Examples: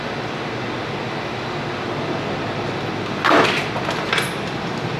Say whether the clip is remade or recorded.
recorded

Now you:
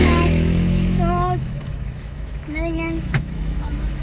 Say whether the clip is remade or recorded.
remade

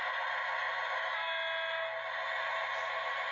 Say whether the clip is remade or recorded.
recorded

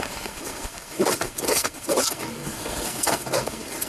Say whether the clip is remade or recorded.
remade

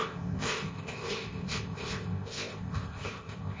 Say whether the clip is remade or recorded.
remade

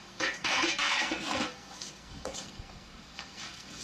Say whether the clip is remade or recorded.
remade